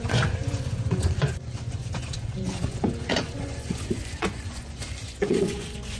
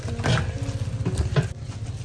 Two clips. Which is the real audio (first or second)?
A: second